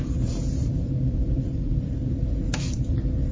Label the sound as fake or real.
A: fake